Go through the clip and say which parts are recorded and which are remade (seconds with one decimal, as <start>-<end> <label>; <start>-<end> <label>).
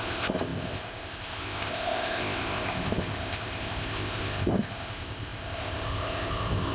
0.0-6.7 remade